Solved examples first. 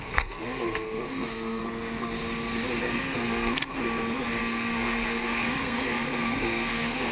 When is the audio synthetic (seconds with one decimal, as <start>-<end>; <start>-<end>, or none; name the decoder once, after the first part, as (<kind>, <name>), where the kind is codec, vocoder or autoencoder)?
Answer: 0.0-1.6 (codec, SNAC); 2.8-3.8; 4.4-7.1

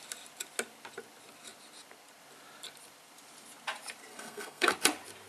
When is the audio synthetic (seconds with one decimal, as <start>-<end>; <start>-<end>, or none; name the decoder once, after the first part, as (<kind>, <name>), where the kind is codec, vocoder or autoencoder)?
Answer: 4.1-4.7 (codec, SNAC)

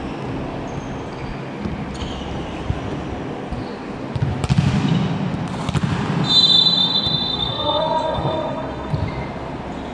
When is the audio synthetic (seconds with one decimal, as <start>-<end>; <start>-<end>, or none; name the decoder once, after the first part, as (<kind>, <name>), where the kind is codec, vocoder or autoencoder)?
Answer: 7.3-8.9 (codec, SNAC)